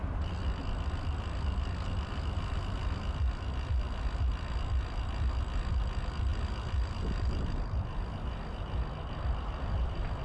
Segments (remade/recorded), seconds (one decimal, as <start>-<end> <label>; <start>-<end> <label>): 0.0-10.2 recorded